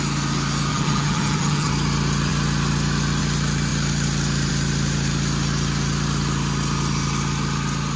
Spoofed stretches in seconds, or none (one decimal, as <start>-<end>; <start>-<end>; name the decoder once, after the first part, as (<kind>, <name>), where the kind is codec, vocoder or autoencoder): 0.7-1.7 (vocoder, HiFi-GAN)